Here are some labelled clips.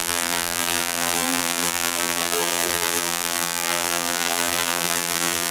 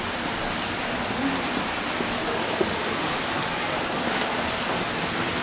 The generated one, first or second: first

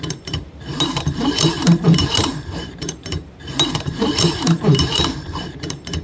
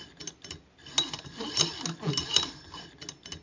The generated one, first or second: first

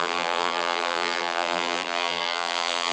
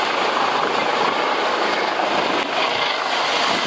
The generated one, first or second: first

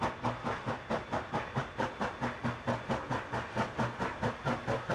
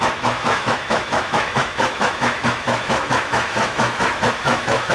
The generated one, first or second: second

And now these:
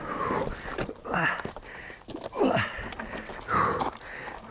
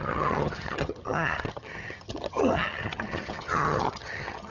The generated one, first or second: second